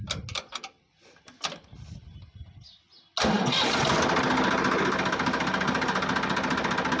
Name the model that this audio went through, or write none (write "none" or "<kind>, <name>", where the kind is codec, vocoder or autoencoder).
none